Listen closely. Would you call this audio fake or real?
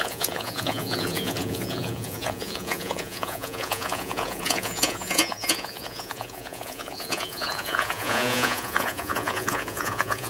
fake